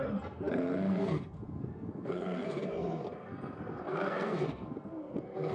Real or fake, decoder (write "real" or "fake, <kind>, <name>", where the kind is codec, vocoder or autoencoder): fake, codec, SNAC